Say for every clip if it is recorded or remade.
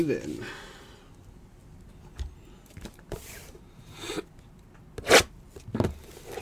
recorded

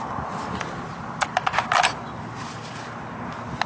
recorded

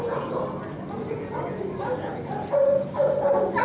recorded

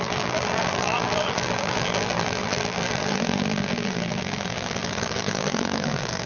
remade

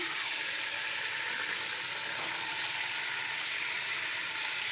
recorded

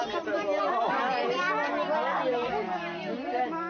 recorded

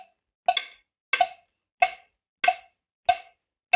recorded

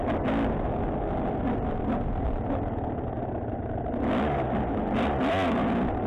recorded